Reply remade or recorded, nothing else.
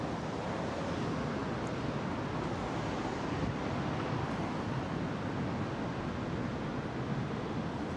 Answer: recorded